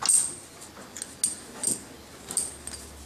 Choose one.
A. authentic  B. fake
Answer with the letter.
A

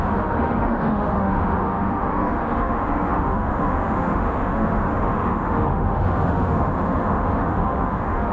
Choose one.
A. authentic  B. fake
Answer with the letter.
B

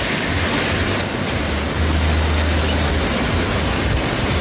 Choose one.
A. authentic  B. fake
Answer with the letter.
A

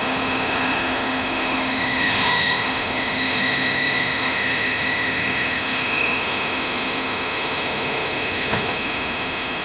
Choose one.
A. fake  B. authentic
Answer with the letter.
A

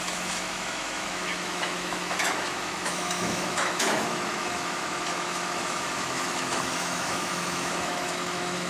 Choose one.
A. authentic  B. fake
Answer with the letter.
B